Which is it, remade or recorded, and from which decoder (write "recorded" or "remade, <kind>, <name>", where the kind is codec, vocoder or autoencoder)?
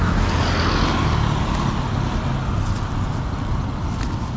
recorded